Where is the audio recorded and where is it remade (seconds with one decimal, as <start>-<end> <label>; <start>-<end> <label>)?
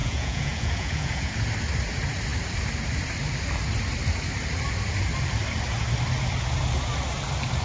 0.0-1.3 remade; 1.3-7.6 recorded